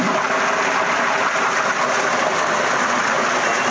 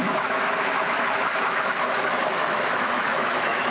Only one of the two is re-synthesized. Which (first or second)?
second